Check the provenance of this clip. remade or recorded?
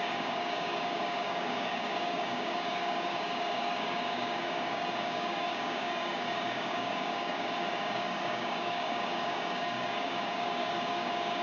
remade